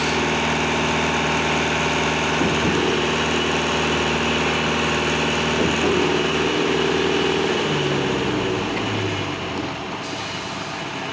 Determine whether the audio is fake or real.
real